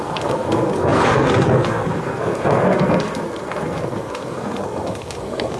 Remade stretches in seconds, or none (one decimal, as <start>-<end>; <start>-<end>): 0.0-5.6